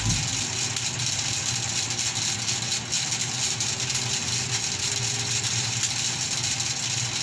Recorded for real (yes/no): yes